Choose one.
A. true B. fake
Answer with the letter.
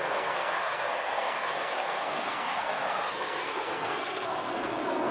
B